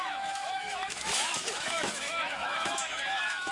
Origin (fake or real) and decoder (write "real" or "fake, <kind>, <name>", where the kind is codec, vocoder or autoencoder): fake, autoencoder, DAC-VAE